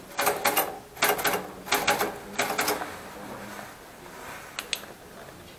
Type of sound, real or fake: real